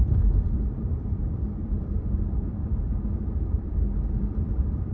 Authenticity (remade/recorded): remade